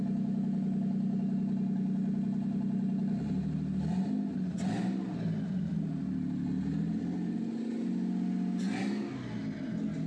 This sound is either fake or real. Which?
real